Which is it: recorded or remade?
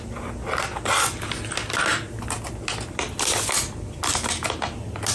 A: recorded